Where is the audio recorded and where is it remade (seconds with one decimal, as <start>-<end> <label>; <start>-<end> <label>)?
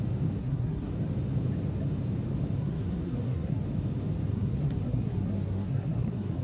0.0-0.4 recorded; 0.4-0.9 remade; 0.9-2.6 recorded; 2.6-3.6 remade; 3.6-4.3 recorded; 4.3-6.4 remade